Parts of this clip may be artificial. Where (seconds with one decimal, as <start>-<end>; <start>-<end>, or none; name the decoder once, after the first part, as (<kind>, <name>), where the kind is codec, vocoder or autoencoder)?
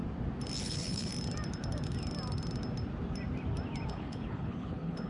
0.6-1.1 (codec, HILCodec); 3.9-5.1